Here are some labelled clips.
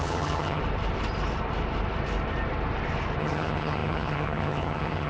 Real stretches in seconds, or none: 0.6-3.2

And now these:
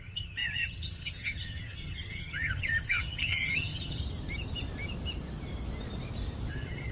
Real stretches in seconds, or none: 4.0-6.5

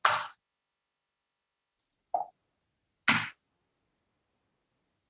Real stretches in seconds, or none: 0.0-5.1

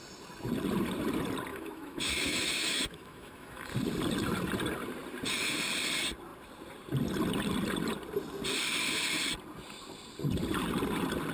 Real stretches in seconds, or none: 0.0-1.5; 3.7-11.3

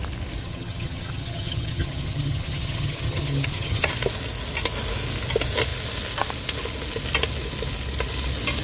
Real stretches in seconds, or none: 0.0-0.4; 3.9-8.6